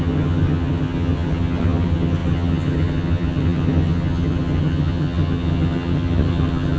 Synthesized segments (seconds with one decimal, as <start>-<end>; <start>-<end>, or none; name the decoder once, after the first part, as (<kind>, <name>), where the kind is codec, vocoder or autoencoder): 0.0-6.8 (vocoder, HiFi-GAN)